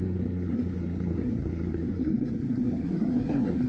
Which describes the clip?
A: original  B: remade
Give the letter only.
B